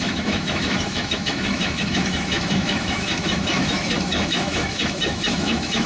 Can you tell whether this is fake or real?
fake